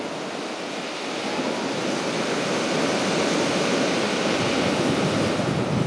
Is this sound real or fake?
real